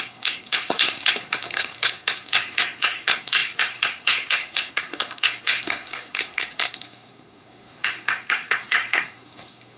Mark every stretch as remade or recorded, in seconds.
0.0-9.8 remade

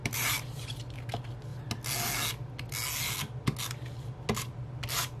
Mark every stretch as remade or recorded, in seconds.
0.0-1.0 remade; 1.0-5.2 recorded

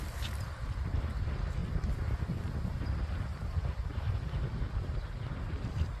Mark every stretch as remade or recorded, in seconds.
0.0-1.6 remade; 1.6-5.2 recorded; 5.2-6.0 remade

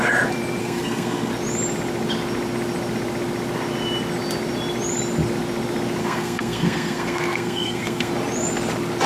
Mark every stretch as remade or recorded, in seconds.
0.0-0.6 recorded; 0.6-1.3 remade; 1.3-6.0 recorded; 6.0-8.1 remade; 8.1-9.1 recorded